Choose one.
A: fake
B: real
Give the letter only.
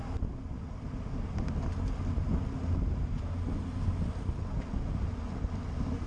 B